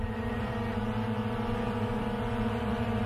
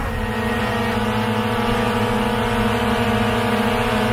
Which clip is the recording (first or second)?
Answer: second